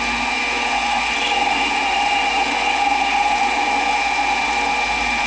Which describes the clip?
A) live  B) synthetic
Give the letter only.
A